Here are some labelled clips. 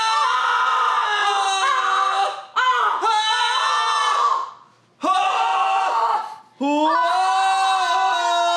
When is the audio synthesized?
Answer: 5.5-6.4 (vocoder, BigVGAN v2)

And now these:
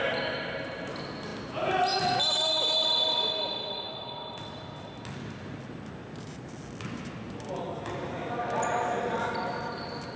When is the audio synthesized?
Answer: none

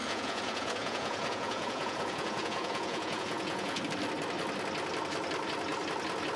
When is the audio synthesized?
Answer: 0.0-3.8 (vocoder, Vocos)

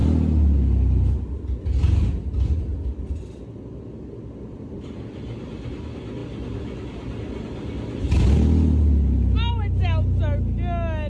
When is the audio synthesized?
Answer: none